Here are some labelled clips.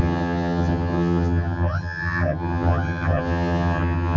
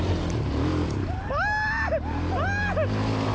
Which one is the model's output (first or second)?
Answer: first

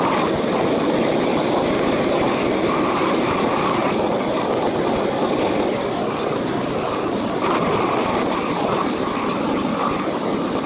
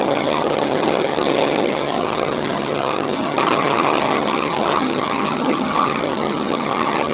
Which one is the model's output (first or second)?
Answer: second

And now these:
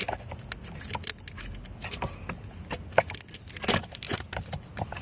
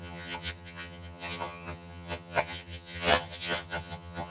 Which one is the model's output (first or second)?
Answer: second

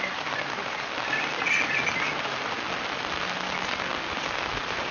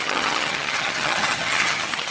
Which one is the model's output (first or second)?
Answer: second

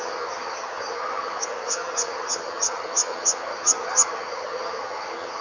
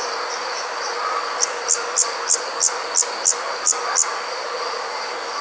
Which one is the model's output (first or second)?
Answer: first